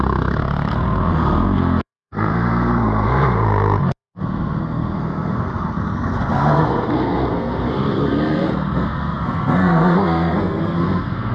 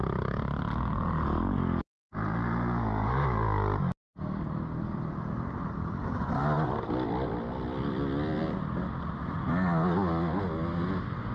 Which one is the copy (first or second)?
first